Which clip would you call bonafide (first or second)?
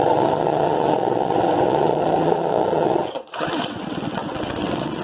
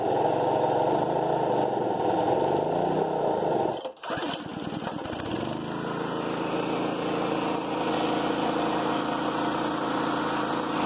second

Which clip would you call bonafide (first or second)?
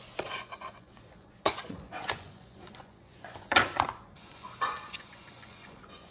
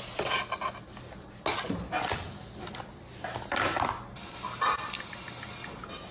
second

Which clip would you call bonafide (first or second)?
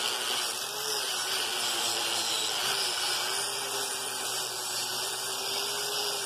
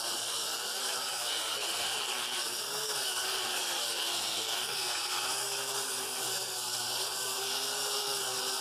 first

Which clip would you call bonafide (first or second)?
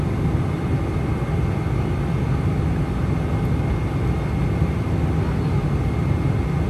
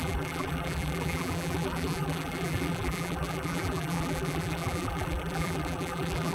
first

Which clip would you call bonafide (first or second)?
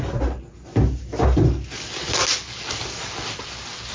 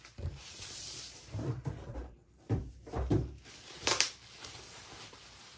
first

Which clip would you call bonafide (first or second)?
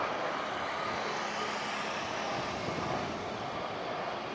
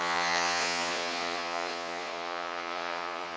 first